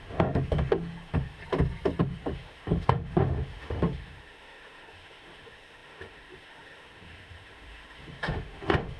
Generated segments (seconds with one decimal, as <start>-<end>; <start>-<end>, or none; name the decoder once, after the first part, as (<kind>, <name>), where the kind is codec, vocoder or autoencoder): 0.0-1.4 (autoencoder, DAC-VAE); 2.0-9.0